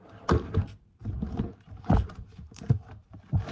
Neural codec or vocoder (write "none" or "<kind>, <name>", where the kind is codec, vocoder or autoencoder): none